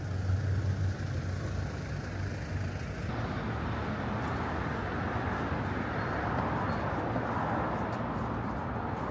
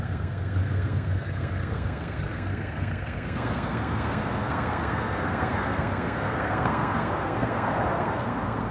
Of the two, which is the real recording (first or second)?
first